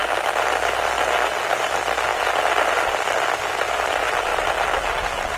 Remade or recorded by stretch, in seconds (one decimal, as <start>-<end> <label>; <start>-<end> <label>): 0.0-1.3 recorded; 1.3-2.1 remade; 2.1-2.7 recorded; 2.7-4.3 remade; 4.3-5.0 recorded; 5.0-5.4 remade